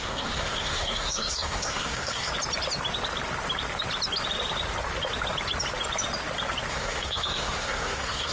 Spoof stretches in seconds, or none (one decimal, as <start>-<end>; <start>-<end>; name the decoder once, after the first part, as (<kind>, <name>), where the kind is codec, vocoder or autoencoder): 0.0-2.3 (codec, SNAC); 6.7-8.3